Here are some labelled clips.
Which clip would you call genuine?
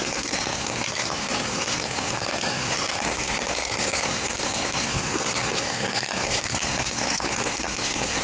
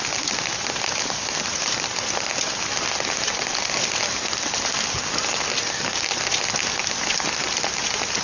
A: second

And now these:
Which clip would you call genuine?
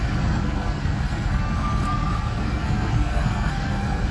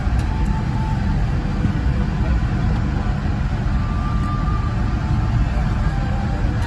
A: second